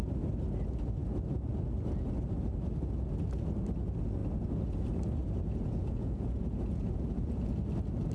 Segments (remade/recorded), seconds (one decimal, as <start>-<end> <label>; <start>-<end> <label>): 0.0-5.2 recorded; 5.2-7.6 remade; 7.6-8.1 recorded

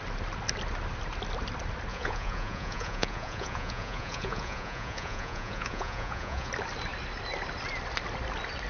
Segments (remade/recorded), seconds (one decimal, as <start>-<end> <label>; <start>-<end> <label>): 0.0-1.9 recorded; 1.9-6.5 remade; 6.5-8.7 recorded

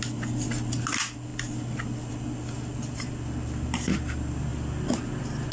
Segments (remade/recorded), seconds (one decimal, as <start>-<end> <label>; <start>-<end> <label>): 0.0-5.5 recorded

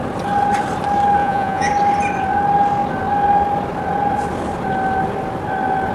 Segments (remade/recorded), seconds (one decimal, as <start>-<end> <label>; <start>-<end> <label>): 0.0-1.2 recorded; 1.2-1.7 remade; 1.7-5.9 recorded

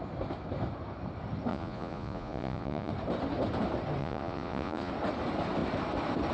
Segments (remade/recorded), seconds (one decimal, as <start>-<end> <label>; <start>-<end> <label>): 0.0-1.5 recorded; 1.5-2.9 remade; 2.9-4.0 recorded; 4.0-4.9 remade; 4.9-6.3 recorded

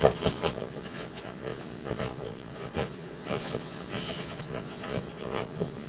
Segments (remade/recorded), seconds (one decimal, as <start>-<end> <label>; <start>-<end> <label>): 0.0-5.9 remade